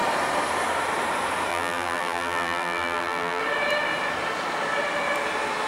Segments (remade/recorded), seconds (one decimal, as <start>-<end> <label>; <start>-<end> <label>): 0.0-1.5 recorded; 1.5-3.4 remade; 3.4-5.7 recorded